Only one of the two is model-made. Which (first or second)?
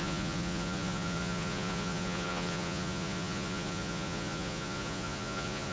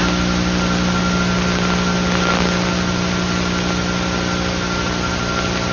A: first